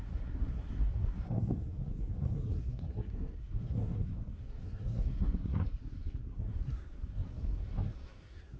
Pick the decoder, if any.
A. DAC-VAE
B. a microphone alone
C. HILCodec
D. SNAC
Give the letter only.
D